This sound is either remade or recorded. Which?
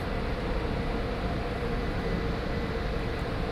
recorded